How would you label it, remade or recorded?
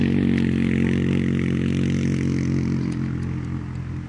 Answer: recorded